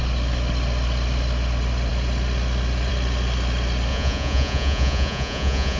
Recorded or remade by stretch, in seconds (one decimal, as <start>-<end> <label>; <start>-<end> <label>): 0.0-3.9 recorded; 3.9-5.8 remade